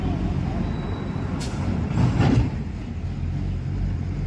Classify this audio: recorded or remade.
recorded